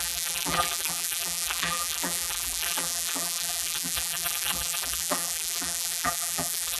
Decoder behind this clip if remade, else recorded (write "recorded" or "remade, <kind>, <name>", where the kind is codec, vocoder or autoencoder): remade, vocoder, BigVGAN v2